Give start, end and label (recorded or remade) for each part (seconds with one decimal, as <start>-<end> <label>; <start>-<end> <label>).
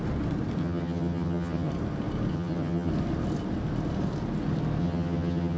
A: 0.0-0.6 recorded; 0.6-1.7 remade; 1.7-2.3 recorded; 2.3-2.9 remade; 2.9-4.8 recorded; 4.8-5.6 remade